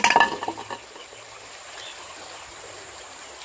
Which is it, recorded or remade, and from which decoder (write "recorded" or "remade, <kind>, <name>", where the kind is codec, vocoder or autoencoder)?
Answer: recorded